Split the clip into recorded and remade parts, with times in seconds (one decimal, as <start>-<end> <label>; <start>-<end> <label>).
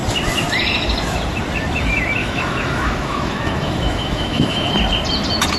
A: 0.0-2.2 recorded; 2.2-4.7 remade; 4.7-5.6 recorded